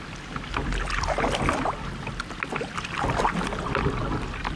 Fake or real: real